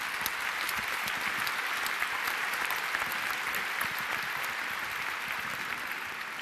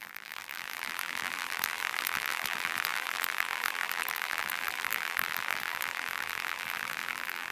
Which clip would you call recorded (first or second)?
first